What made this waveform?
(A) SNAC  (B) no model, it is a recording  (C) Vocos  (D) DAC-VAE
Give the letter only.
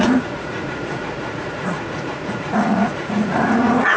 C